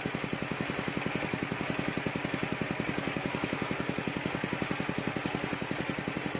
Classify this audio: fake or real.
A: real